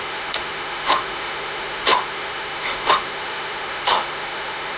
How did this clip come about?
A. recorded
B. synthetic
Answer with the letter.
B